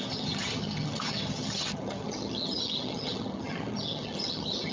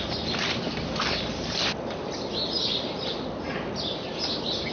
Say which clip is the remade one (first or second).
first